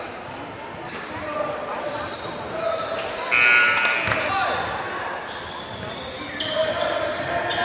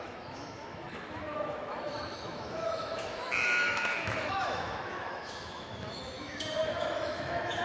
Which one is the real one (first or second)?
first